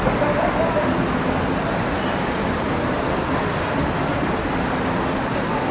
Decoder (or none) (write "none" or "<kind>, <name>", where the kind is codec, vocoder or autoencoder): none